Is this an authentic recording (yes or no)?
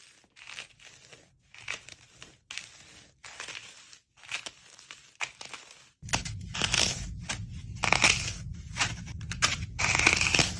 yes